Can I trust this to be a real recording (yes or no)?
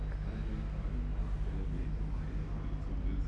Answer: yes